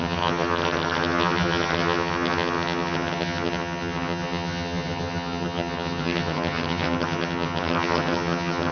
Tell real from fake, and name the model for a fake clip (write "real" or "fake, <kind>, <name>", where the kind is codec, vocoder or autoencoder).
fake, vocoder, HiFi-GAN